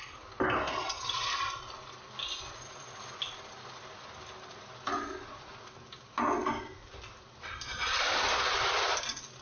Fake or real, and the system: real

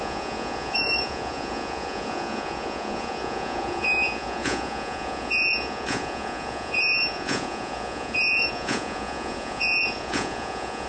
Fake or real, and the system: fake, vocoder, Vocos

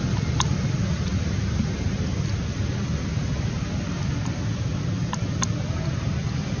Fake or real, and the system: real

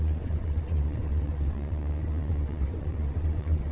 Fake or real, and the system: fake, vocoder, WaveNeXt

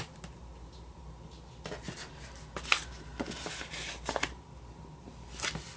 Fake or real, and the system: real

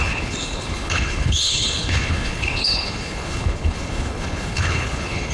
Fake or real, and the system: fake, codec, HILCodec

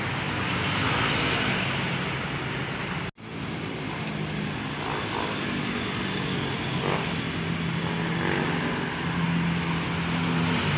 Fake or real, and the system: real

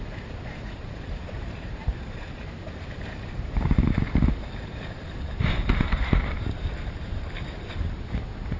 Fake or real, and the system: fake, vocoder, BigVGAN v2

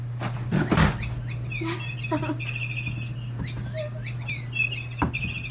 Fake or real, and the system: real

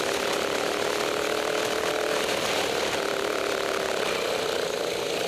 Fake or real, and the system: real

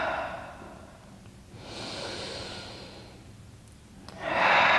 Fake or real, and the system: real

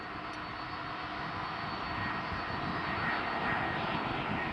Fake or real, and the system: real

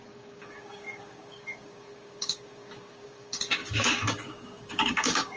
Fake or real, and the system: fake, codec, DAC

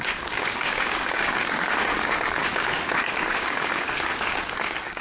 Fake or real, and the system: fake, codec, DAC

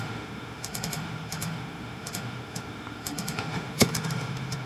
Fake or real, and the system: fake, autoencoder, DAC-VAE